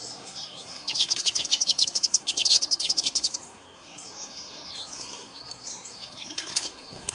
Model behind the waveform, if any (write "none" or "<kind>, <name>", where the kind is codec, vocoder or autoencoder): codec, SNAC